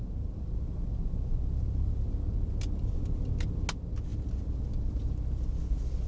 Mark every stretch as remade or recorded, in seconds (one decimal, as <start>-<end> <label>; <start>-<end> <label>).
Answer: 0.0-6.1 recorded